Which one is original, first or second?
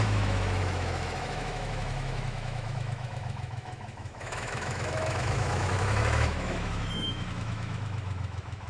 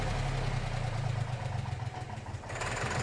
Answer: second